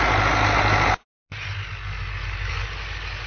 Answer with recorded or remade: recorded